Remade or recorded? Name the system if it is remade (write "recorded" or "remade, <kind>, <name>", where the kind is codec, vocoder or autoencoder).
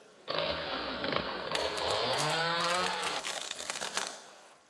remade, codec, SNAC